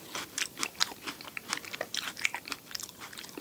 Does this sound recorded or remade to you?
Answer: recorded